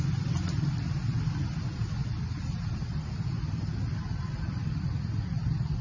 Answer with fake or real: fake